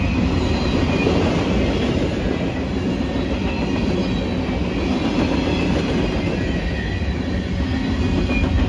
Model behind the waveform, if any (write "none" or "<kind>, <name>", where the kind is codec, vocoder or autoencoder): none